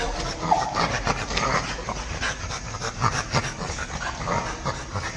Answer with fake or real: real